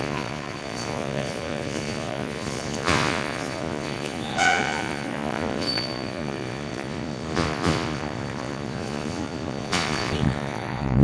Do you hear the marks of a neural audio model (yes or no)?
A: yes